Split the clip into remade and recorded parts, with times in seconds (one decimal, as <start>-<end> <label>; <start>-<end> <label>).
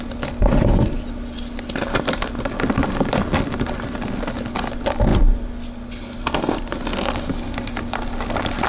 0.0-8.7 recorded